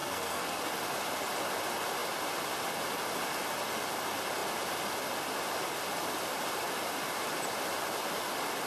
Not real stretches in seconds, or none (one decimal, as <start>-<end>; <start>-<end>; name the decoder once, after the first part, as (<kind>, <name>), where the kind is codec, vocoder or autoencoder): 0.0-0.6 (codec, SNAC)